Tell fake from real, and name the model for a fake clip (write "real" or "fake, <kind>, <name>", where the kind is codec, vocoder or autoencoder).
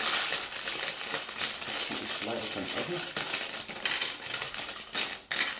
real